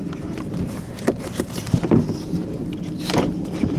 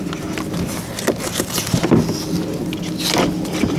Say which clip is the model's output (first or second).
first